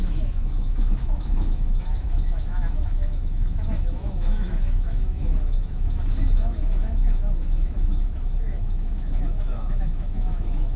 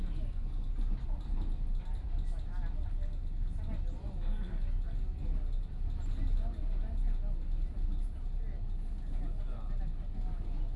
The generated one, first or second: first